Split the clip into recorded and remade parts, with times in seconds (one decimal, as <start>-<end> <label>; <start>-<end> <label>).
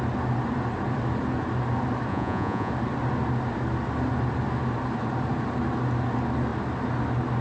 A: 0.0-2.1 recorded; 2.1-2.7 remade; 2.7-7.4 recorded